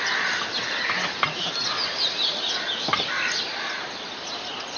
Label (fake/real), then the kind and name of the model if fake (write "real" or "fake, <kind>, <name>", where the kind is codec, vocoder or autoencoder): fake, vocoder, BigVGAN v2